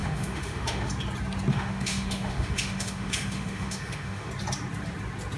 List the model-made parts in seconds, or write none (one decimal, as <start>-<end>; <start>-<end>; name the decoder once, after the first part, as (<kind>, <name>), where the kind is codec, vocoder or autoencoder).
0.0-0.9 (autoencoder, DAC-VAE); 1.5-4.3